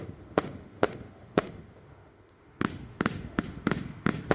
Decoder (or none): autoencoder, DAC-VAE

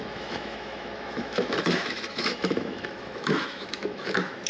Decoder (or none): autoencoder, DAC-VAE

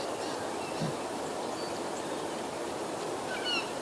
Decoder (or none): none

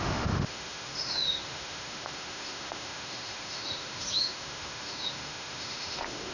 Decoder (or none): autoencoder, DAC-VAE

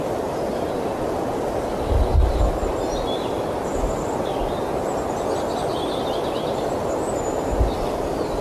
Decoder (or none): none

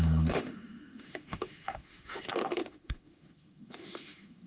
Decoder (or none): autoencoder, DAC-VAE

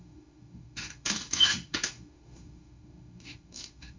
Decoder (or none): autoencoder, DAC-VAE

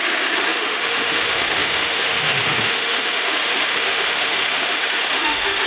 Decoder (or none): autoencoder, DAC-VAE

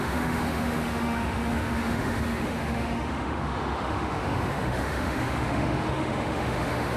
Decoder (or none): autoencoder, DAC-VAE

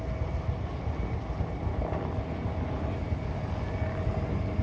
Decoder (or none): none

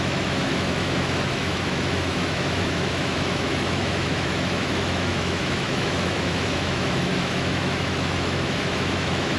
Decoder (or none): autoencoder, DAC-VAE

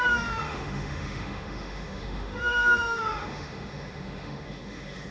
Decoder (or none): autoencoder, DAC-VAE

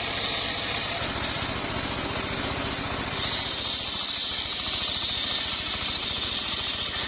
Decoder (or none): none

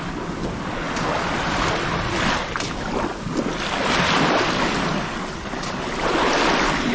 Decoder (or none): none